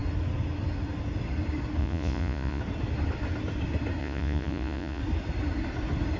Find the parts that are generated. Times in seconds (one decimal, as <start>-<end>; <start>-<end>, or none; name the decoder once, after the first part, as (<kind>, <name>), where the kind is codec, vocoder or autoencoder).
1.8-2.6 (vocoder, Vocos); 4.0-5.0